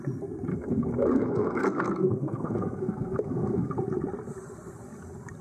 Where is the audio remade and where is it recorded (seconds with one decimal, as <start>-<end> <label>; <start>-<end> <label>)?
0.0-0.5 recorded; 0.5-3.7 remade; 3.7-5.4 recorded